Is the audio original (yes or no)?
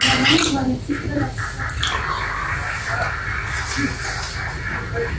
yes